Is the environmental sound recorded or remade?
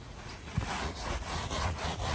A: remade